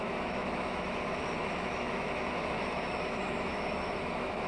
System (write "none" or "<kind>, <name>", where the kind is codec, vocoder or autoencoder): autoencoder, DAC-VAE